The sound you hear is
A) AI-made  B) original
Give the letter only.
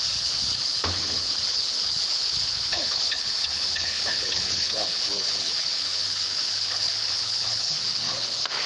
A